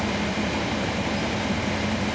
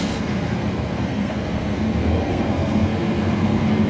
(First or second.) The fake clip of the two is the second